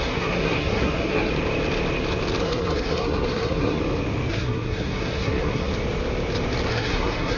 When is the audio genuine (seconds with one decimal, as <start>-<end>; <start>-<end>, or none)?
1.3-2.4; 3.8-4.3; 5.7-6.7

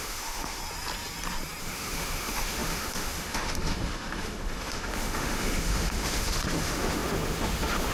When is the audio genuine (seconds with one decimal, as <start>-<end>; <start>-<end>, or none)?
0.6-1.6

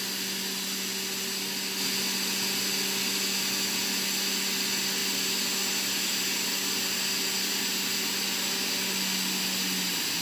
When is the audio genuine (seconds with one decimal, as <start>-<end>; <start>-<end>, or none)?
0.0-10.2

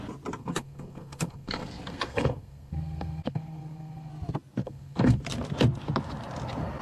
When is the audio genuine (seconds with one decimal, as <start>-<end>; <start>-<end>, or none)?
0.0-0.4; 4.1-4.6; 5.2-6.8

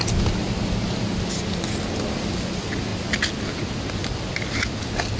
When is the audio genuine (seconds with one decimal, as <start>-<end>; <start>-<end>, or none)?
0.0-5.2